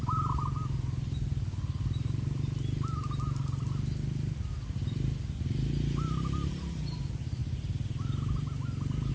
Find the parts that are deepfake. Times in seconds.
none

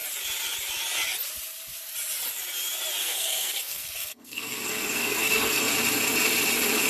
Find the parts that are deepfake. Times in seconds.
3.0-5.6 (codec, SNAC)

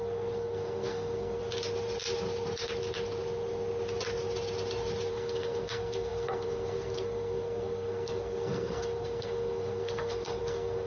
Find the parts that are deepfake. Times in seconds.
0.0-1.4 (codec, SNAC); 5.1-10.9

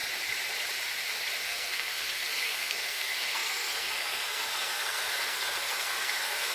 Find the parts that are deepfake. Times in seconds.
1.4-6.5 (codec, SNAC)

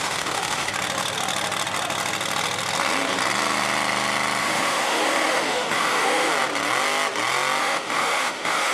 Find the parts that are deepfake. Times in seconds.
0.0-0.7 (autoencoder, DAC-VAE); 4.4-6.3; 7.6-8.7

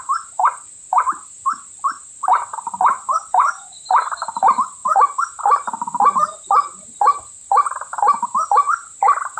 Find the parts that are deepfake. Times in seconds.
0.0-0.4 (vocoder, BigVGAN v2); 0.9-1.4; 2.0-9.4

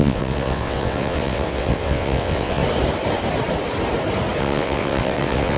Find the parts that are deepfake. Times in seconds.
0.0-2.6 (vocoder, WaveNeXt); 4.4-5.6

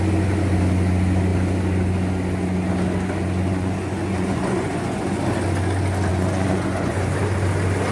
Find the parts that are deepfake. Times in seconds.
3.5-5.2 (vocoder, Vocos); 6.1-7.2